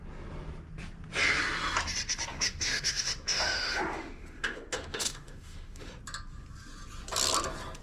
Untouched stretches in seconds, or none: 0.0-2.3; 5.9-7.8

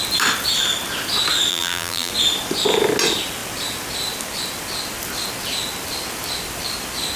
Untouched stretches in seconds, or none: 0.0-1.5; 2.1-7.2

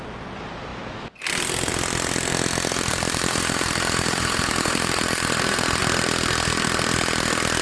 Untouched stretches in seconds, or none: 0.0-2.9; 5.8-7.6

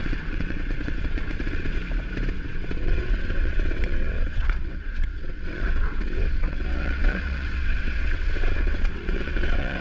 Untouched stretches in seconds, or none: 1.8-2.3

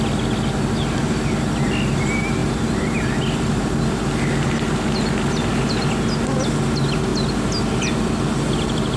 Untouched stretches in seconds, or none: 0.0-9.0

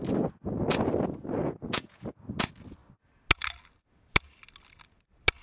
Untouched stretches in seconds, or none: 0.0-1.4; 2.2-5.4

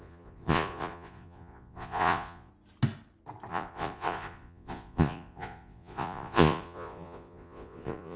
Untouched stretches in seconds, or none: 2.5-3.5